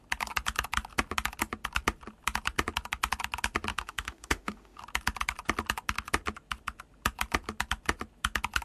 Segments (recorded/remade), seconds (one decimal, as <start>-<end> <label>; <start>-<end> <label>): 0.0-3.7 recorded; 3.7-4.8 remade; 4.8-8.6 recorded